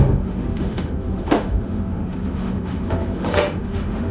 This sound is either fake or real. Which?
fake